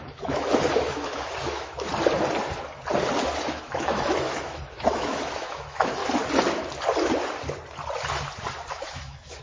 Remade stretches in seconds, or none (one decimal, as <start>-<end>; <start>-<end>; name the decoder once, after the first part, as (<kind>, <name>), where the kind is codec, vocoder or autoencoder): 0.0-1.9 (autoencoder, DAC-VAE); 3.4-6.0; 8.7-9.4